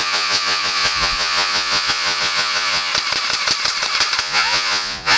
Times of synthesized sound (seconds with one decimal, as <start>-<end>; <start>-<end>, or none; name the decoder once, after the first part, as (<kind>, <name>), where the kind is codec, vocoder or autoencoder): 0.0-2.9 (vocoder, Vocos); 4.2-5.2